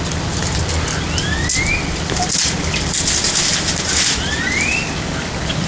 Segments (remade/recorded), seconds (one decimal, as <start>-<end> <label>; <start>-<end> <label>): 0.0-5.7 recorded